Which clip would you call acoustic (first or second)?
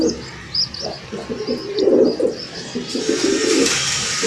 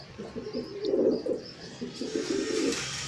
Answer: first